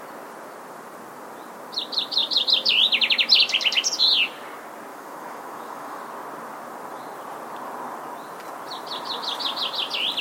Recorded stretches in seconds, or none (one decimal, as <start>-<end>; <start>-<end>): 0.0-4.9; 6.0-10.2